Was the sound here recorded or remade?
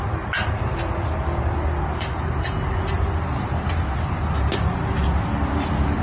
recorded